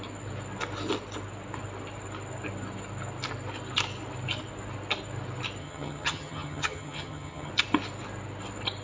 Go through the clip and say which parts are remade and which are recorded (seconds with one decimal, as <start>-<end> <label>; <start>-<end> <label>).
0.0-5.6 recorded; 5.6-7.5 remade; 7.5-8.8 recorded